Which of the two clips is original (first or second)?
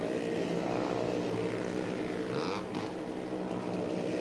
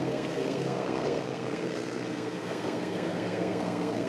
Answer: first